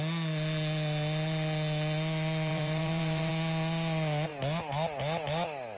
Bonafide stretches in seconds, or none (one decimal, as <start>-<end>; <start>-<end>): 0.0-2.5; 3.3-5.8